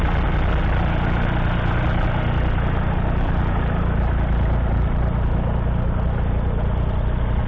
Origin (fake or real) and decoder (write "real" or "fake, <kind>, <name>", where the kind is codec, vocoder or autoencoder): real